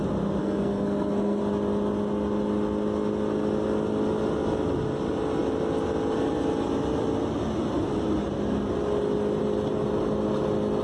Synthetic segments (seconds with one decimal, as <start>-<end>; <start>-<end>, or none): 0.4-1.4